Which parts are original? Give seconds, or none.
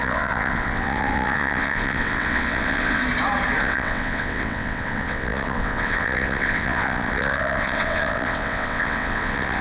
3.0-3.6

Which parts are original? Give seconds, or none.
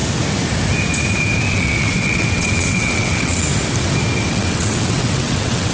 0.0-1.5; 3.5-4.3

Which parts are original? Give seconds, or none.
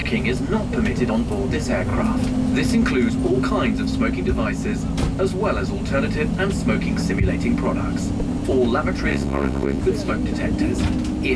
0.0-9.1; 9.8-11.4